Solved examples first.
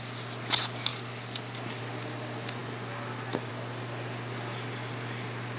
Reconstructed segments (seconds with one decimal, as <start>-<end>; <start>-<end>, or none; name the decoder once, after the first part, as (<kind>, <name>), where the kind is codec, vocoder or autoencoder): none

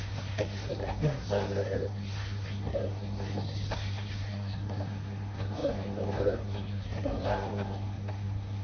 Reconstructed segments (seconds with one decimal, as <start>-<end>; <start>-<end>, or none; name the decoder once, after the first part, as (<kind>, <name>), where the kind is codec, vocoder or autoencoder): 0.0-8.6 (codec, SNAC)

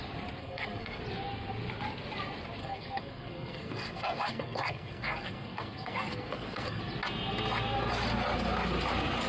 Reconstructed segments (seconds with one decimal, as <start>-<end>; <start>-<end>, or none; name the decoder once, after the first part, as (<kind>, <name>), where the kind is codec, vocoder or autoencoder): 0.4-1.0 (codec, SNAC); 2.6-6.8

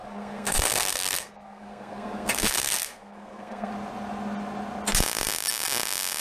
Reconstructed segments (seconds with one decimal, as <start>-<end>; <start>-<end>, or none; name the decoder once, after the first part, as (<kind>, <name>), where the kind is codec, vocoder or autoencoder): 0.0-3.7 (codec, SNAC)

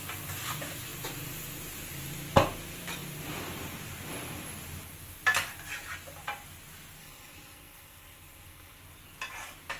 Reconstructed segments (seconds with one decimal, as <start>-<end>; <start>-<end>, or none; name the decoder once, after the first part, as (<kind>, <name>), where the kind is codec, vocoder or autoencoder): 7.0-8.8 (codec, SNAC)

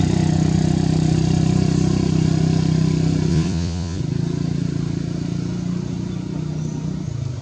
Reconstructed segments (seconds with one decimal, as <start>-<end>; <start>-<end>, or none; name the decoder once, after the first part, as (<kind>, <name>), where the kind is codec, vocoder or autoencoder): 3.3-4.0 (vocoder, Vocos)

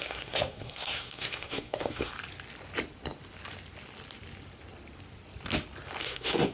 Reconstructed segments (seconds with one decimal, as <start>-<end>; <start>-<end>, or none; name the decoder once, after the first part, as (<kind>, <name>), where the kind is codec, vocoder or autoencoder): 0.0-2.1 (codec, SNAC); 6.0-6.5